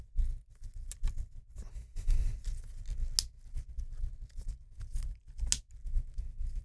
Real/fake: real